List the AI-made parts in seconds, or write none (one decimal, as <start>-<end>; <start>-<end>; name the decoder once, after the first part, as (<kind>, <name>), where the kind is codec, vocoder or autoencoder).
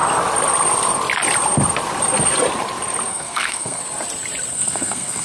3.1-3.8 (codec, SNAC); 4.5-5.2